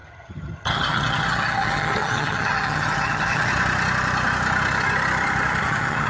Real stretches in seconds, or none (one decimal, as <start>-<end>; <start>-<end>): 3.5-5.6